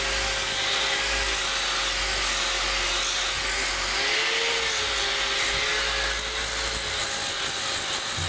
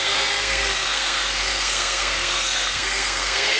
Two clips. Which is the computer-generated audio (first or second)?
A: second